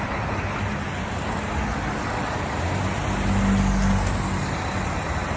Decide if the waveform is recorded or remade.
recorded